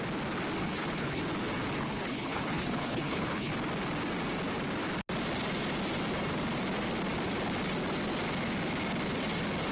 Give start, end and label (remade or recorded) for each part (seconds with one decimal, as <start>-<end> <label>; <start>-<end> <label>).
0.0-0.6 recorded; 0.6-1.2 remade; 1.2-1.8 recorded; 1.8-3.5 remade; 3.5-9.7 recorded